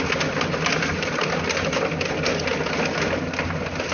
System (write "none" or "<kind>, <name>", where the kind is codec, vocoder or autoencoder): none